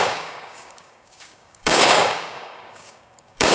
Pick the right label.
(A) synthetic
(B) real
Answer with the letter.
A